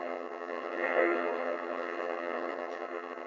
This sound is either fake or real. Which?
fake